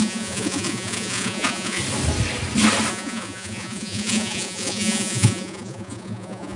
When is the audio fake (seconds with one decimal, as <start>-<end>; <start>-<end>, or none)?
0.0-1.8; 2.9-6.6